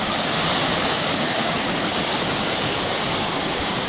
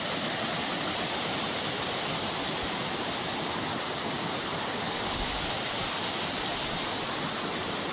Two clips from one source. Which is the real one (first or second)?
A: second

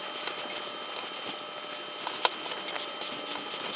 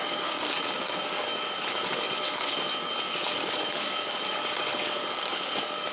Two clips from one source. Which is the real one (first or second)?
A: first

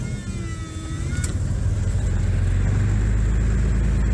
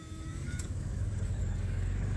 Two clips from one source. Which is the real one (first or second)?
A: first